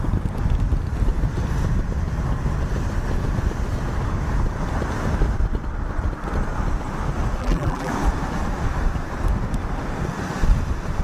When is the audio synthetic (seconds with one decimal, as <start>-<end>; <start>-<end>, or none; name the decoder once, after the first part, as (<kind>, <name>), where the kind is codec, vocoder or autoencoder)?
7.4-7.9 (vocoder, BigVGAN v2)